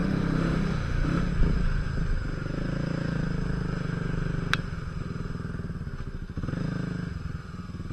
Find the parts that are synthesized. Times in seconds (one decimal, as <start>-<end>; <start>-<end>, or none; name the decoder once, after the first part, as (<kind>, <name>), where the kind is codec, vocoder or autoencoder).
0.0-1.3 (autoencoder, DAC-VAE)